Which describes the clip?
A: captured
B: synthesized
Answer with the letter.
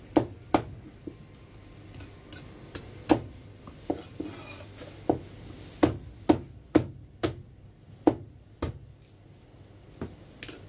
A